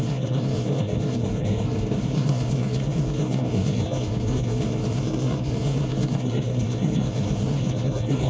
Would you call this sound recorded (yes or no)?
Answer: no